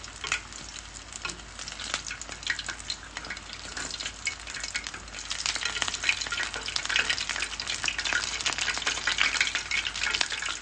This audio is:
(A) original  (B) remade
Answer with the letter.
A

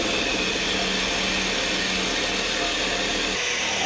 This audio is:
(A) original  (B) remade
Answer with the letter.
A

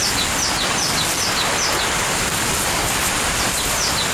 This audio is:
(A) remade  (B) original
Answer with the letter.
B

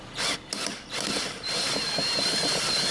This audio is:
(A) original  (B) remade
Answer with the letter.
A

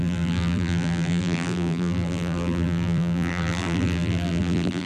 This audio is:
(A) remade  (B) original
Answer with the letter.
A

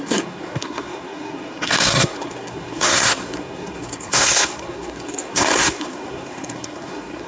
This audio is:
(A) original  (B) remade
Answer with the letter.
B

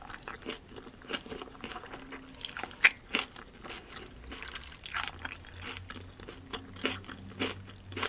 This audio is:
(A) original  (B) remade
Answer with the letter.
A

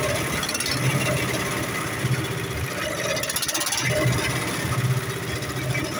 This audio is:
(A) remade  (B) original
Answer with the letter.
B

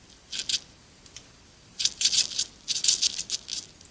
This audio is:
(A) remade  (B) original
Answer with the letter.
B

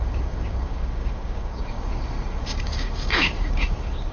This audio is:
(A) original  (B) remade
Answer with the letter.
B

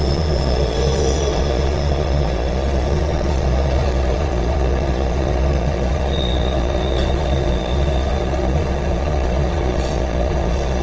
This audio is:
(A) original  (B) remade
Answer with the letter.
B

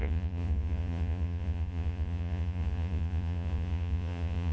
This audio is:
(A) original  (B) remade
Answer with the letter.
B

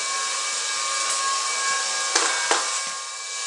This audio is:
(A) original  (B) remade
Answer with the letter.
A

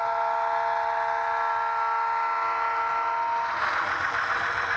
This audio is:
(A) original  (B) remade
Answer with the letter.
A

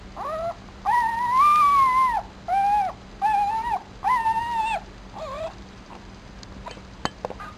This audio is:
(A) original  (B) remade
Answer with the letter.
A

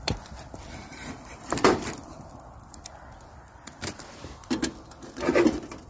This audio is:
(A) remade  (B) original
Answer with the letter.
A